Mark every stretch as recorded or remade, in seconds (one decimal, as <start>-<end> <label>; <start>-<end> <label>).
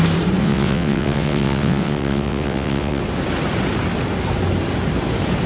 0.0-0.4 recorded; 0.4-3.0 remade; 3.0-5.5 recorded